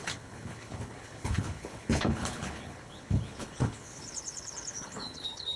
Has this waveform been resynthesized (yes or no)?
yes